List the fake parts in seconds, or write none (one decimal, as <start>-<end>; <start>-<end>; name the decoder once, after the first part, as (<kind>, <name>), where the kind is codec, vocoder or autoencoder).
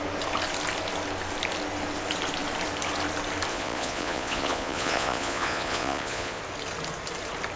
3.5-6.4 (vocoder, Vocos)